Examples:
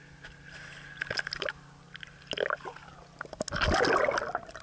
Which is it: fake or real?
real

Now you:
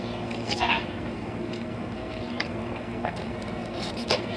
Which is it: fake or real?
fake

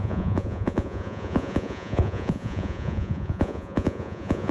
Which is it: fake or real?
fake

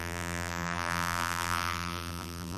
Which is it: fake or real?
fake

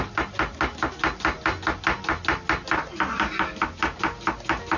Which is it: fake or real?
real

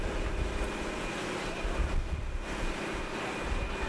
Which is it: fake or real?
real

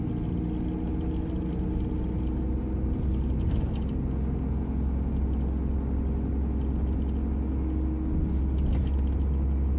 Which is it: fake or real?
real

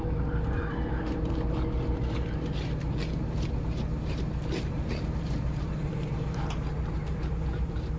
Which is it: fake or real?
fake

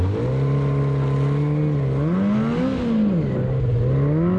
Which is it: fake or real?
real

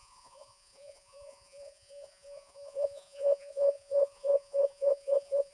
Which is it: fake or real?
fake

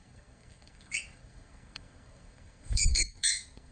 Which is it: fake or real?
fake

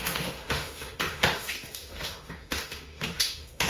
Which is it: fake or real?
fake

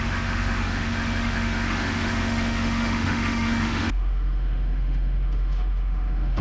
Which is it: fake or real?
fake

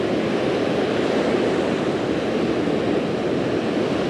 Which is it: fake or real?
real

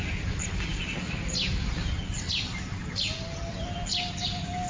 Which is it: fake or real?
real